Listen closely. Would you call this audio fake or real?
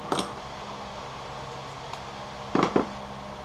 real